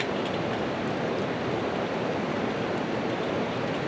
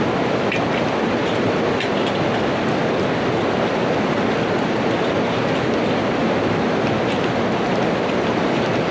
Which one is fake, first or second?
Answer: first